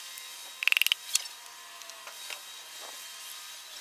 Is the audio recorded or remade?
recorded